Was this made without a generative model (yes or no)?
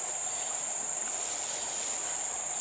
yes